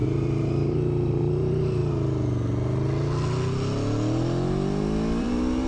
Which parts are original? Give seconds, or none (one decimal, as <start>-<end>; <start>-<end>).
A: 1.8-5.2